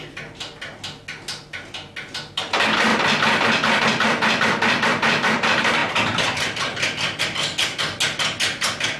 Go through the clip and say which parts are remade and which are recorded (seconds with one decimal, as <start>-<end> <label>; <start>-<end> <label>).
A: 0.0-9.0 recorded